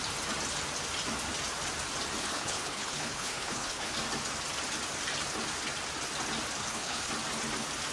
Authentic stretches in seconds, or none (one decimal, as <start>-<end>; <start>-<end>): 0.0-2.2; 3.9-6.6; 7.1-7.9